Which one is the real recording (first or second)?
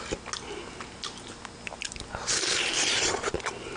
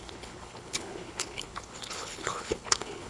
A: first